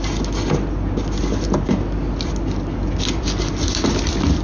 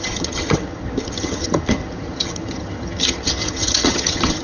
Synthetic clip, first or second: second